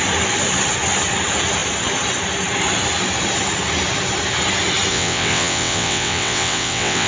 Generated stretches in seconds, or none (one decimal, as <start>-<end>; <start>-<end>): 4.9-7.1